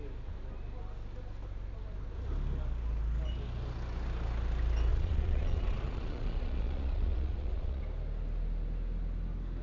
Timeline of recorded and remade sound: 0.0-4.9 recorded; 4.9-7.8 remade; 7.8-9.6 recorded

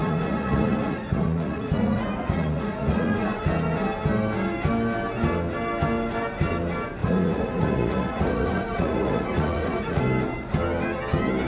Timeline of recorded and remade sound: 0.0-3.4 remade; 3.4-7.0 recorded; 7.0-10.0 remade; 10.0-11.5 recorded

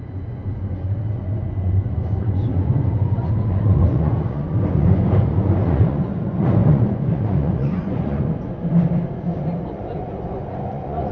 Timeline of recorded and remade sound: 0.0-8.6 remade; 8.6-9.4 recorded; 9.4-11.1 remade